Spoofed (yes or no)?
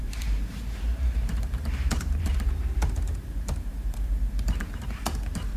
yes